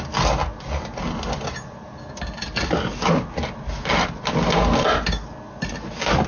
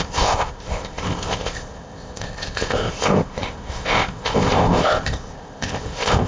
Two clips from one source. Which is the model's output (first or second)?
second